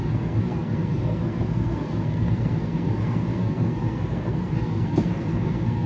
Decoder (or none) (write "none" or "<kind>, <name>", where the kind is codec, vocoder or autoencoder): codec, SNAC